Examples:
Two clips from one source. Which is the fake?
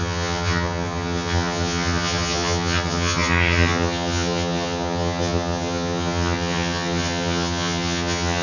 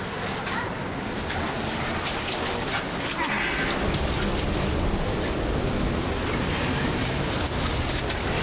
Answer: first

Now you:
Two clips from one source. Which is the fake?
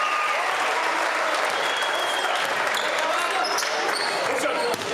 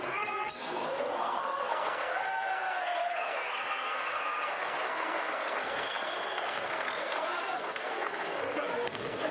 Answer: second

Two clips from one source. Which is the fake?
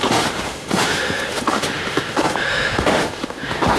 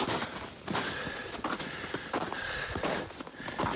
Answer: first